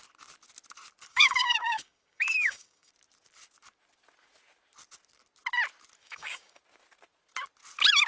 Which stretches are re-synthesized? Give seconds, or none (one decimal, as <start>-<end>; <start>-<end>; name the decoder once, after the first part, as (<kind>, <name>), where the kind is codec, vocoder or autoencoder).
1.1-2.9 (codec, DAC); 6.0-6.6